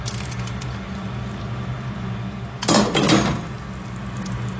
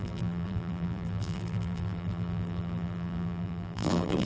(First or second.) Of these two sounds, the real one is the first